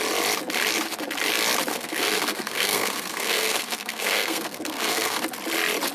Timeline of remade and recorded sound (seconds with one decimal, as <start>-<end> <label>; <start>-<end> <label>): 0.0-1.7 recorded; 1.7-5.2 remade; 5.2-5.9 recorded